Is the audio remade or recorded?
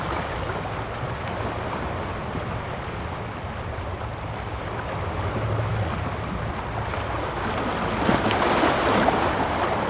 recorded